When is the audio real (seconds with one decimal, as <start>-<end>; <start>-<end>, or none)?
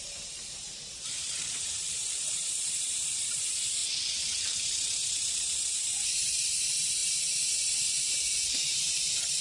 3.8-4.4